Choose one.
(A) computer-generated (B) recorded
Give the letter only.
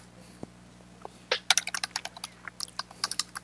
B